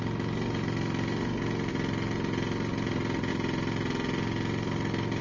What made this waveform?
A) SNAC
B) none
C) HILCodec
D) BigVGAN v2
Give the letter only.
B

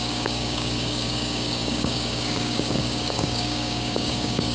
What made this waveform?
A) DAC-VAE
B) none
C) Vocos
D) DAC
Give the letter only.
D